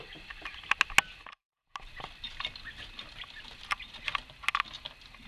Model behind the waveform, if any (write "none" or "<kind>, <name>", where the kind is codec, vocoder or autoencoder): none